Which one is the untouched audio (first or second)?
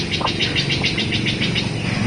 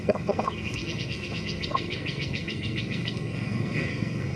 first